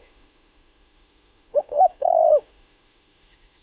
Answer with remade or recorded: remade